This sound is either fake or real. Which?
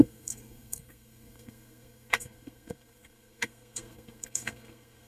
fake